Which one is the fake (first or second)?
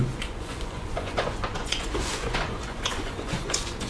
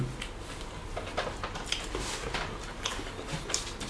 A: first